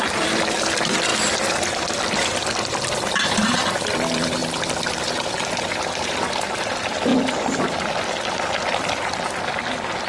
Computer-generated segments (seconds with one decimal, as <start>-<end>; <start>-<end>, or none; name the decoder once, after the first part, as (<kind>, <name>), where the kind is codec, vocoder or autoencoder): 0.0-4.4 (vocoder, BigVGAN v2); 5.0-7.1; 7.6-10.1